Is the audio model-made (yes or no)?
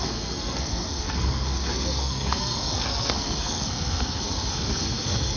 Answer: yes